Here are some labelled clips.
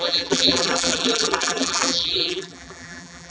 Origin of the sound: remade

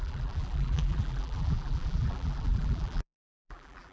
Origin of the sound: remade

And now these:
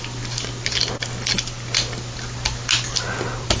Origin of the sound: recorded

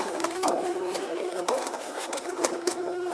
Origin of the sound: remade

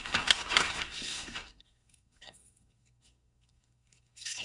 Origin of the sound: remade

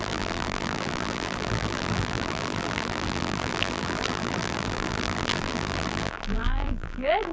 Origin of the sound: remade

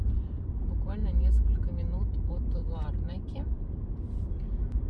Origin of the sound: remade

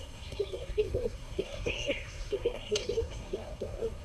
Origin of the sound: remade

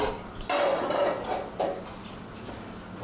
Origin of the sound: recorded